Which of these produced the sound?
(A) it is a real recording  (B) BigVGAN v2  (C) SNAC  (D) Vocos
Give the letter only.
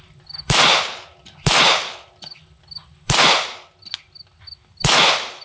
A